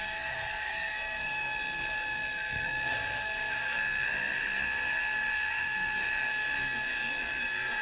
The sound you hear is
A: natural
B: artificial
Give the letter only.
B